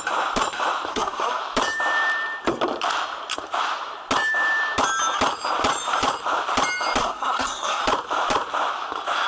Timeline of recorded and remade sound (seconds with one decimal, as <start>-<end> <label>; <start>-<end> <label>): 0.0-0.9 recorded; 0.9-1.4 remade; 1.4-7.0 recorded; 7.0-7.8 remade; 7.8-9.3 recorded